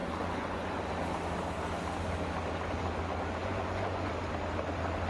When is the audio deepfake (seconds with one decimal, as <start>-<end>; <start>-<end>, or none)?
0.0-0.8; 3.4-4.1